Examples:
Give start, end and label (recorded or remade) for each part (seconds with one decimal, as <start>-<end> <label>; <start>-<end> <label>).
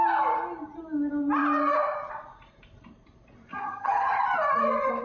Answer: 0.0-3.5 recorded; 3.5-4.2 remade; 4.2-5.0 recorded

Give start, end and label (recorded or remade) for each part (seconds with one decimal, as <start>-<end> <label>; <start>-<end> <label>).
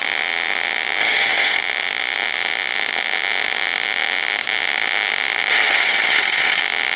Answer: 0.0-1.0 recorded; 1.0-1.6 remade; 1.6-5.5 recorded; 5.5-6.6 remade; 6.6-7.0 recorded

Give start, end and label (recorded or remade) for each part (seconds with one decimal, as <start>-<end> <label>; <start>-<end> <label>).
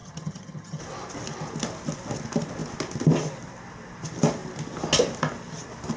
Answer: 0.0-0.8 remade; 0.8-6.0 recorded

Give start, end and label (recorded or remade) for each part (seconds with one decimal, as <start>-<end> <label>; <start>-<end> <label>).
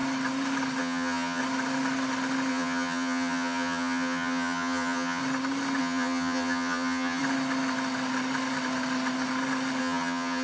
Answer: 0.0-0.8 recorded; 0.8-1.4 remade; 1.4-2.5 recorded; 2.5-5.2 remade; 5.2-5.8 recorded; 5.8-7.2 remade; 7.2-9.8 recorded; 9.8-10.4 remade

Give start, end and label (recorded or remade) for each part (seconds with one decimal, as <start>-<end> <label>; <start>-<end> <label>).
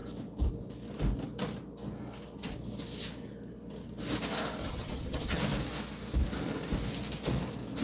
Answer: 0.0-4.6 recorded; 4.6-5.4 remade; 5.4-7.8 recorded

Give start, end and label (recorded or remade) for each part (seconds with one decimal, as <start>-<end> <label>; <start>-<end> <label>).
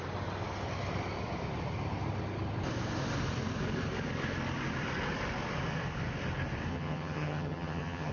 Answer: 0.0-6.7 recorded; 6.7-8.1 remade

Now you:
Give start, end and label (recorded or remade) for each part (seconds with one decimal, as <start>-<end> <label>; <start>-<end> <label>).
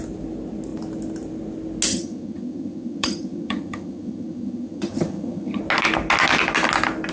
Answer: 0.0-1.9 recorded; 1.9-5.6 remade; 5.6-7.1 recorded